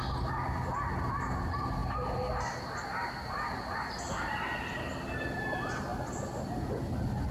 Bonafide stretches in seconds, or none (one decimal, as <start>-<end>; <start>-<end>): 0.0-7.3